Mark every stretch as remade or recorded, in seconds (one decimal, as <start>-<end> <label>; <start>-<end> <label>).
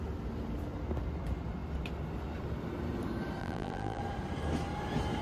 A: 0.0-3.4 recorded; 3.4-4.0 remade; 4.0-5.2 recorded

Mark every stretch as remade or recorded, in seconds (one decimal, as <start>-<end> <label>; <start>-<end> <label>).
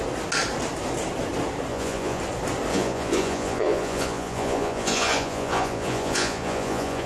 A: 0.0-1.7 recorded; 1.7-2.2 remade; 2.2-2.7 recorded; 2.7-7.1 remade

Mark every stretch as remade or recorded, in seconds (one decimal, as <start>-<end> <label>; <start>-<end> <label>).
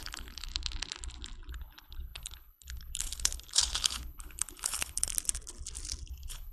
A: 0.0-0.5 remade; 0.5-1.5 recorded; 1.5-5.1 remade; 5.1-6.1 recorded; 6.1-6.5 remade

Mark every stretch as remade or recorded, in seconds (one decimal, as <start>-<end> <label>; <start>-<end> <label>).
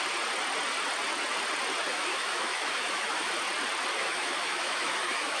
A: 0.0-1.9 recorded; 1.9-3.3 remade; 3.3-3.9 recorded; 3.9-5.4 remade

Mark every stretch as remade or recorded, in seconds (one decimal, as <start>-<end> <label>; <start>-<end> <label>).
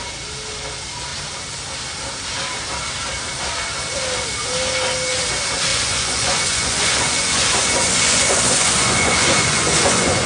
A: 0.0-5.7 recorded; 5.7-10.3 remade